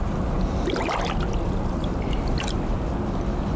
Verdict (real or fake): real